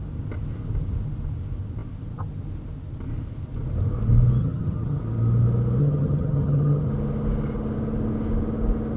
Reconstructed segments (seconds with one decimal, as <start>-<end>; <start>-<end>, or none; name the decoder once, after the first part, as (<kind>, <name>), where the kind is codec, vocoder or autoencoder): 4.4-5.0 (vocoder, HiFi-GAN); 5.8-6.9